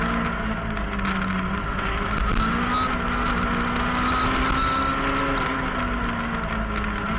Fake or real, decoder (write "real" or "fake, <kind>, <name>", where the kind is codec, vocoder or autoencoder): real